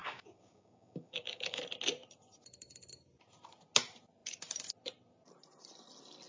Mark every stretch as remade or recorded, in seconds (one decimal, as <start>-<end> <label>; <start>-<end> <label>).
0.0-1.6 remade; 1.6-6.3 recorded